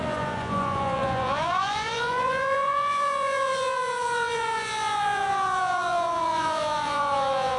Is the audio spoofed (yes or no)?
yes